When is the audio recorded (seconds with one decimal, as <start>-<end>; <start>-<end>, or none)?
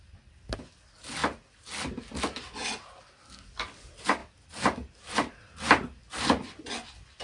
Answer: 0.0-7.2